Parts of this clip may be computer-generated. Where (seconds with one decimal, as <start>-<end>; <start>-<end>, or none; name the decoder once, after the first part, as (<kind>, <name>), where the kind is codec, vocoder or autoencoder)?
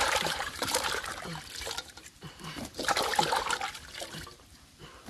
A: 0.0-1.1 (vocoder, BigVGAN v2); 2.0-3.1; 4.1-5.1